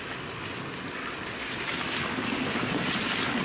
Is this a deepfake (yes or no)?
no